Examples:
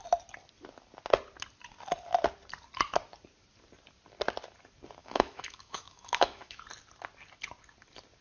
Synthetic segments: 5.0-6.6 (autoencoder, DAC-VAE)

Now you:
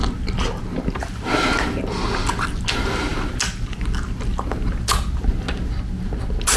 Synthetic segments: none